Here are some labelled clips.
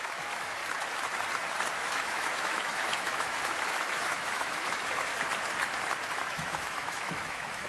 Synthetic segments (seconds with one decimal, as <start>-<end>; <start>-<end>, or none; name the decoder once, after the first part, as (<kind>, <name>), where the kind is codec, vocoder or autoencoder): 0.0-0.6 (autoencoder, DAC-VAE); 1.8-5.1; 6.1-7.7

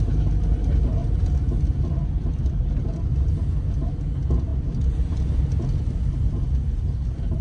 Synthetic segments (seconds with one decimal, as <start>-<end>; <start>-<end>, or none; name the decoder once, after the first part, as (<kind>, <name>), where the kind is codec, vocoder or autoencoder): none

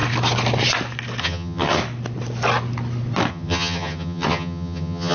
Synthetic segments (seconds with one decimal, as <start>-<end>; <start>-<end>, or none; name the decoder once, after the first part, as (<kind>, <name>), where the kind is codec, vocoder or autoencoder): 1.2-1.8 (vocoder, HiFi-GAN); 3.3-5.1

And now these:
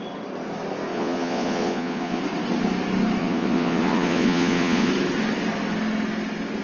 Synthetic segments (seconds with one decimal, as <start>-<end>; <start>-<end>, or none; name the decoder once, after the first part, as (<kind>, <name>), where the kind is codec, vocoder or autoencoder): 0.9-2.2 (vocoder, Vocos); 3.2-4.9

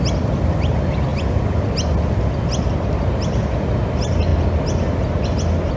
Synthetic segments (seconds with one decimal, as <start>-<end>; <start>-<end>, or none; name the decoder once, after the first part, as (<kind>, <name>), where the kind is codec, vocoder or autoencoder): none